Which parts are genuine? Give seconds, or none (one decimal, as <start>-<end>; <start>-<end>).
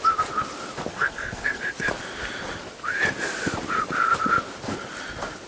0.0-0.9; 1.6-5.5